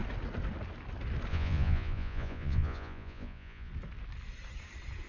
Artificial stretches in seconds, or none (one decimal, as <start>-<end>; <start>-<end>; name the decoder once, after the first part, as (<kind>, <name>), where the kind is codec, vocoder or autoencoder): 1.3-3.7 (vocoder, Vocos)